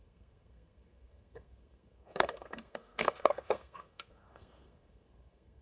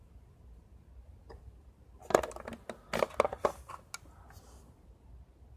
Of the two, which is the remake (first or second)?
first